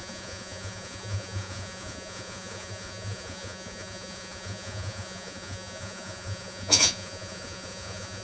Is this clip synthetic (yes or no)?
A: yes